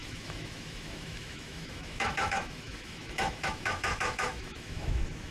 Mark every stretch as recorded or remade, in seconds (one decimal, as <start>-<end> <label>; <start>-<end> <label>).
0.0-5.3 remade